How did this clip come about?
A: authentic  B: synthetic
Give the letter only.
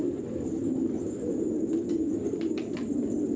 A